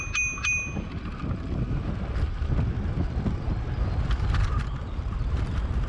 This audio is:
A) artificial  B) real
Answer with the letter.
B